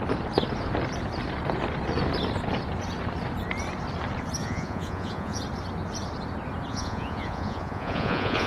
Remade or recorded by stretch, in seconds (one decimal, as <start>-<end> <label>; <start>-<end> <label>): 0.0-4.4 recorded; 4.4-5.4 remade; 5.4-6.7 recorded; 6.7-8.5 remade